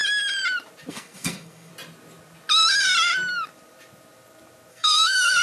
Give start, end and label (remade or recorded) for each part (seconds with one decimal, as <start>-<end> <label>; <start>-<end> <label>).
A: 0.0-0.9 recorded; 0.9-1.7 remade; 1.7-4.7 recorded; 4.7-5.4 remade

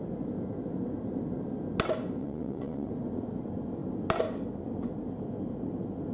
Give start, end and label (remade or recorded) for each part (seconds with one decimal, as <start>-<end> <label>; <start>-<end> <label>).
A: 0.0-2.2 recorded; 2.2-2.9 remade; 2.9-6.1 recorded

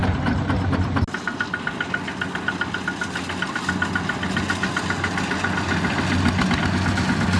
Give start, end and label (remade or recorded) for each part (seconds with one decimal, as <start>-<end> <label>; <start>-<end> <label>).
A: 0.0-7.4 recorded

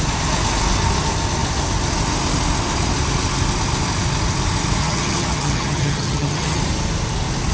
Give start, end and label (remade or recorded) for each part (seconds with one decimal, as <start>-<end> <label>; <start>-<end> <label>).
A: 0.0-4.8 recorded; 4.8-6.6 remade; 6.6-7.5 recorded